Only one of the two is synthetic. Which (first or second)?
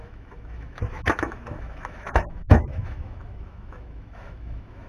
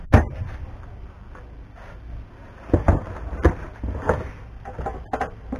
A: first